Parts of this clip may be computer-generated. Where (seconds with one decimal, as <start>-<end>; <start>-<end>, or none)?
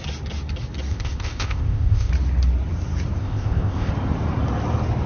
0.9-2.1; 3.2-3.9